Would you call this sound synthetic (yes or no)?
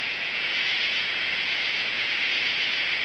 yes